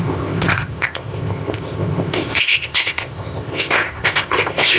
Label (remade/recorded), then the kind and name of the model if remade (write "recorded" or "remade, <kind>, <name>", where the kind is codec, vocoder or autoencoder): remade, codec, ZipCodec